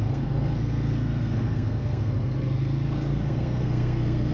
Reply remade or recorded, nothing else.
remade